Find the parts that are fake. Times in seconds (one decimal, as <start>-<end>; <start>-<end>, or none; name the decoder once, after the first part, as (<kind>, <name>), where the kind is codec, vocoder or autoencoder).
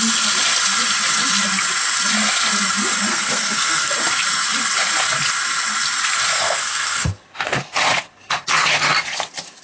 3.1-3.9 (codec, SNAC); 6.3-7.2